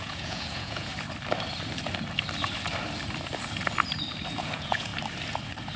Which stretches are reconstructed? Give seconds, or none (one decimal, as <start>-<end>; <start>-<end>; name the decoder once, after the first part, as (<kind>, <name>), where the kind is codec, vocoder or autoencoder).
0.0-0.9 (vocoder, Vocos); 4.4-4.9